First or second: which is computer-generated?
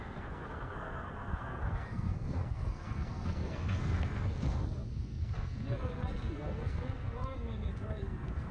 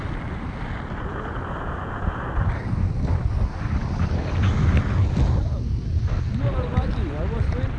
first